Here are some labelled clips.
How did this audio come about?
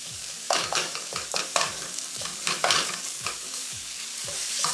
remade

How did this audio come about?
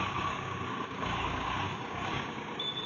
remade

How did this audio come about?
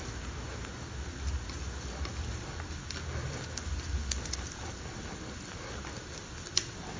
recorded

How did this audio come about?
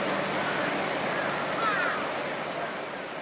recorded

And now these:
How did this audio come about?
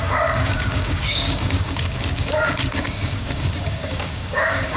remade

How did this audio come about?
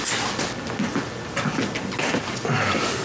recorded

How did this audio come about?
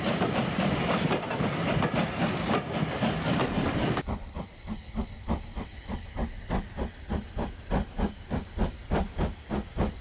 recorded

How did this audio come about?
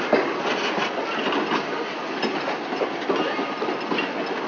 recorded